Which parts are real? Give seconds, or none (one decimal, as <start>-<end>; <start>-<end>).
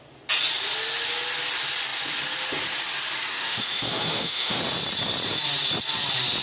0.0-3.3; 4.6-6.4